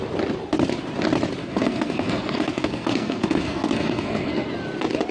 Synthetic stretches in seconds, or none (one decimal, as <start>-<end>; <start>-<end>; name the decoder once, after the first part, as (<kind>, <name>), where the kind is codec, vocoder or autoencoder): 1.4-4.5 (codec, SNAC)